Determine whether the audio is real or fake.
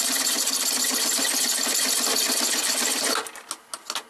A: real